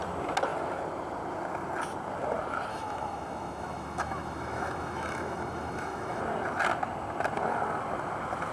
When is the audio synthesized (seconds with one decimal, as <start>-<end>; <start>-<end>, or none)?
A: 2.7-6.2